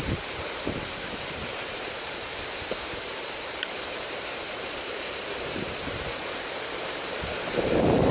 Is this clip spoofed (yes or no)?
yes